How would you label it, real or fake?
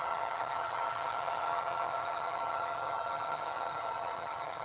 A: fake